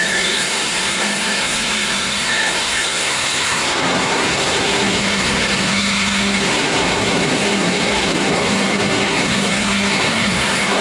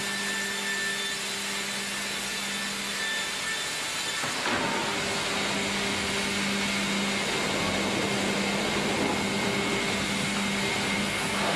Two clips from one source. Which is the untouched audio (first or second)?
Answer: second